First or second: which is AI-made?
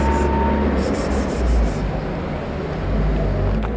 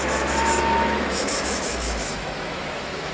second